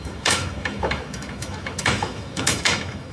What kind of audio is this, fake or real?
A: fake